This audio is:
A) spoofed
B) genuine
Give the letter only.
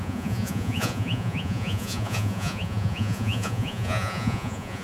A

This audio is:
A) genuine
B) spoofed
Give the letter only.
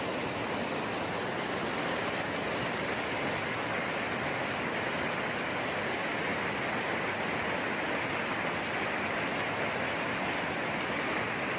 A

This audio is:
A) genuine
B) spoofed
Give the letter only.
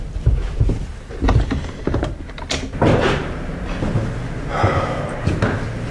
A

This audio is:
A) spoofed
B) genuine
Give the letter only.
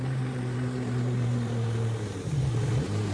A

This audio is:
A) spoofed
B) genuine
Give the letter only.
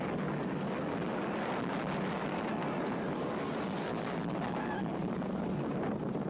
B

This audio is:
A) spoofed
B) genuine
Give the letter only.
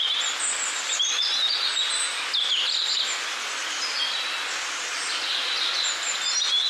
B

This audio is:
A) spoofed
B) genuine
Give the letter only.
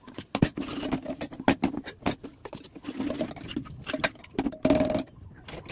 B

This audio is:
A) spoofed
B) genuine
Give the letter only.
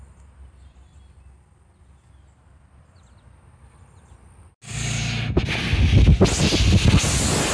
B